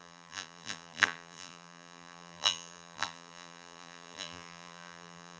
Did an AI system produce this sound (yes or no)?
yes